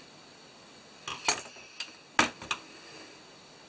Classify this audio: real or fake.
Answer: real